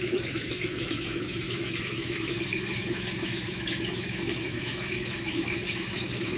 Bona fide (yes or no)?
no